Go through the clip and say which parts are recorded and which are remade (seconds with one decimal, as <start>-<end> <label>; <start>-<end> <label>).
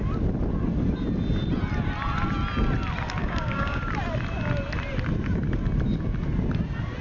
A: 0.0-3.2 recorded; 3.2-3.8 remade; 3.8-7.0 recorded